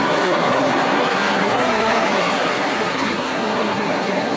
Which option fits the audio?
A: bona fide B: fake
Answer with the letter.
B